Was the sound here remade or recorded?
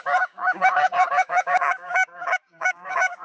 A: remade